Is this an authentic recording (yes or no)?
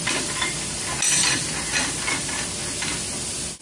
yes